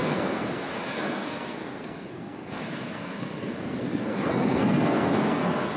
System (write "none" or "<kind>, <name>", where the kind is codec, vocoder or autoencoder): codec, SNAC